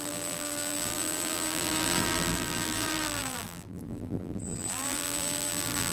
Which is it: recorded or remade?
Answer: remade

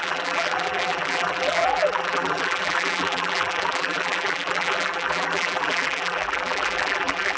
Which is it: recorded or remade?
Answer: remade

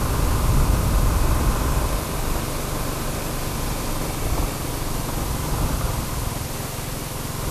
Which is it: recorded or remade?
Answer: recorded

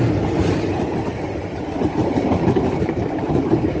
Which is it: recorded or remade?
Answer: remade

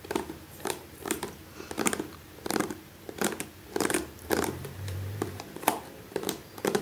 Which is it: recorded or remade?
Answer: remade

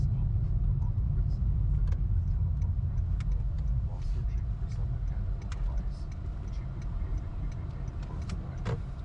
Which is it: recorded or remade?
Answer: recorded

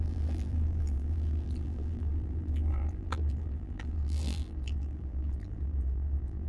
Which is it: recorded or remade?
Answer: remade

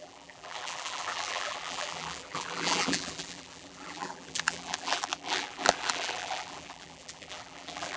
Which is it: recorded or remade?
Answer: remade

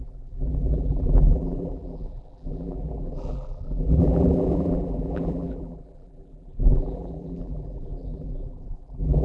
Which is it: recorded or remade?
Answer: remade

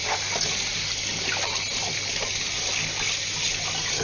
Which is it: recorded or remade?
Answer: recorded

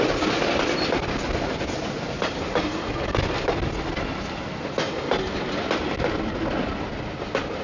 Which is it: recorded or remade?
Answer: recorded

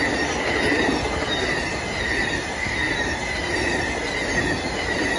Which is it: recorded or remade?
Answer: recorded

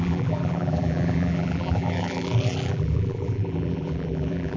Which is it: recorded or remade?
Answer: remade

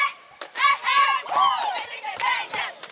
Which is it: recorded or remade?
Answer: recorded